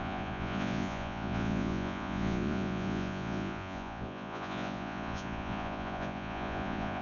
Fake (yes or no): yes